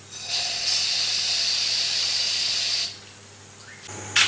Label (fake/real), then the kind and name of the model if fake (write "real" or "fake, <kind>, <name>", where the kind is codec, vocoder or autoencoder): real